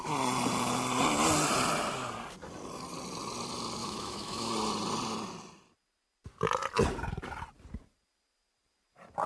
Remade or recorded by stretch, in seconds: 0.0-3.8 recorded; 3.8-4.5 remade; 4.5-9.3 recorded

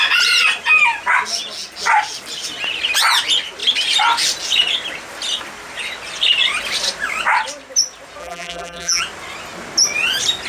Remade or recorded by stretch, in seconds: 0.0-8.2 recorded; 8.2-9.0 remade; 9.0-10.5 recorded